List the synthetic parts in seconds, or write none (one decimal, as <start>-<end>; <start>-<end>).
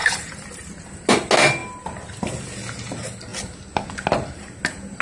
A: 0.0-0.7